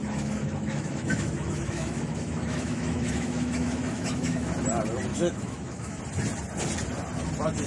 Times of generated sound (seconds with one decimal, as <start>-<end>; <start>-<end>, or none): 0.0-4.5; 5.1-6.0